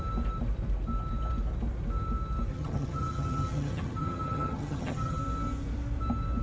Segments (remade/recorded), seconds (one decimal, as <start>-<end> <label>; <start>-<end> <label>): 0.0-2.5 recorded; 2.5-5.2 remade; 5.2-6.4 recorded